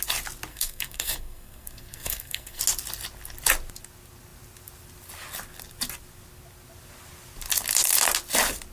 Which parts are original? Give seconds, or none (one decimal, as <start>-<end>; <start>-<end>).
0.0-0.5; 2.6-8.7